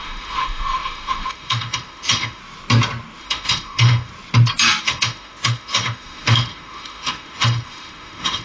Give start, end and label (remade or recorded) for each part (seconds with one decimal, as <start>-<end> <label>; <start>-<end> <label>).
0.0-2.4 remade; 2.4-3.2 recorded; 3.2-4.1 remade; 4.1-4.8 recorded; 4.8-8.4 remade